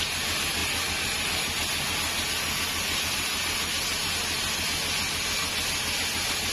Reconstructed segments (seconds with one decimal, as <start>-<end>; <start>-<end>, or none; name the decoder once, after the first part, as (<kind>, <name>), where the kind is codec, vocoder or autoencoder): none